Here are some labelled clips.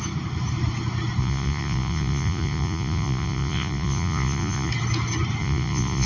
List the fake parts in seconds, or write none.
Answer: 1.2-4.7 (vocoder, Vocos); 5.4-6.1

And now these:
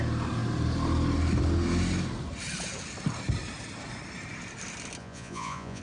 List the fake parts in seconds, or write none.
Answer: 5.0-5.8 (vocoder, Vocos)

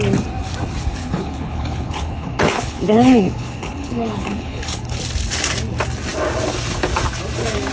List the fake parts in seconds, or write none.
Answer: 1.0-5.0 (codec, HILCodec)

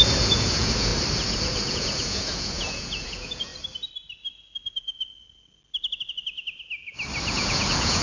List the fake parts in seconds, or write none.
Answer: 0.0-0.9 (vocoder, Vocos); 1.7-3.5; 7.3-8.0

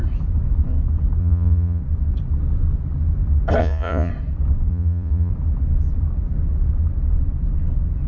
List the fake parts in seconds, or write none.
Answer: 1.2-1.8 (vocoder, Vocos); 3.6-4.1; 4.7-5.3

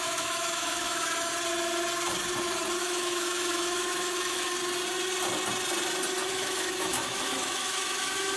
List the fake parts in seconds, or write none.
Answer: 0.0-1.3 (autoencoder, DAC-VAE); 2.8-4.6; 6.3-8.4

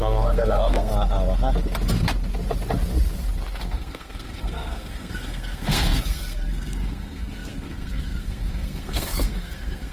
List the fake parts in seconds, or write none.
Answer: 0.0-0.9 (codec, SNAC); 3.6-9.9

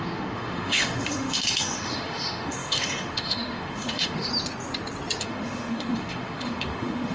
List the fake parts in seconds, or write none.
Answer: 0.0-4.3 (autoencoder, DAC-VAE); 5.2-7.1